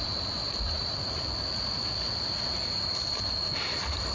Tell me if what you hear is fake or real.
fake